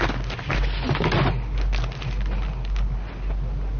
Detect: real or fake real